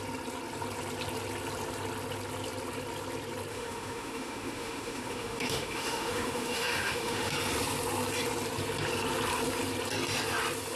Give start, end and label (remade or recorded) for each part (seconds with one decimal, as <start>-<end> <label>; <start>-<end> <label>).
0.0-3.5 recorded; 3.5-7.3 remade; 7.3-10.8 recorded